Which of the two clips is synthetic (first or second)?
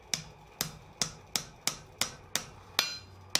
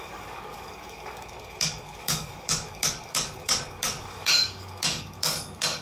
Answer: second